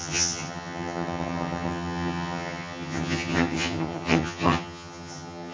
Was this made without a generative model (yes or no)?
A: no